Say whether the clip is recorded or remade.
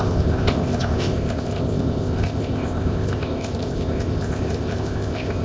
remade